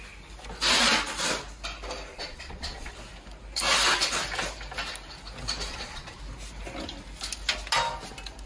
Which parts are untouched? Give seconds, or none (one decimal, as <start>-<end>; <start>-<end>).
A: 0.0-2.1; 3.0-5.7; 6.2-8.5